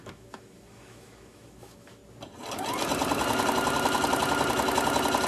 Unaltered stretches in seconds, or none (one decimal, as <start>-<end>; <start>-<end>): 2.0-5.3